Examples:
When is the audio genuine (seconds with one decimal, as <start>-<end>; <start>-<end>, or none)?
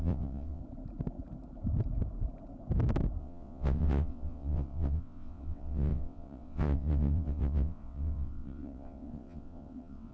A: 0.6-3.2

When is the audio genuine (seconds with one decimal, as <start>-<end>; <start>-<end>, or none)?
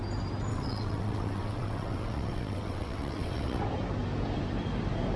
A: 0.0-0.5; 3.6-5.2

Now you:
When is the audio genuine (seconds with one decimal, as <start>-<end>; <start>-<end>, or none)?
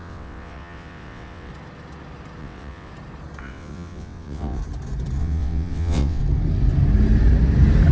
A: 1.5-2.4; 2.9-3.4; 4.6-5.2; 6.2-7.9